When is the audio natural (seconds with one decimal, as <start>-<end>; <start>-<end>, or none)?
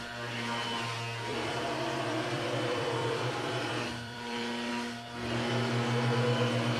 0.0-1.3; 4.7-6.8